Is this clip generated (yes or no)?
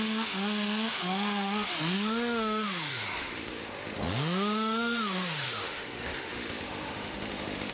yes